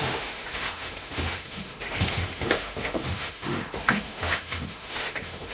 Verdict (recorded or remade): remade